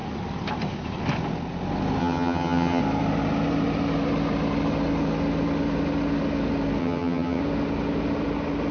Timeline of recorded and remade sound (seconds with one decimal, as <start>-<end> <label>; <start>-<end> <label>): 0.0-2.0 recorded; 2.0-2.8 remade; 2.8-6.8 recorded; 6.8-7.4 remade; 7.4-8.7 recorded